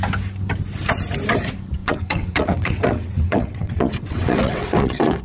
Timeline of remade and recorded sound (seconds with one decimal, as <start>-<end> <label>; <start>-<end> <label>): 0.0-1.8 recorded; 1.8-5.2 remade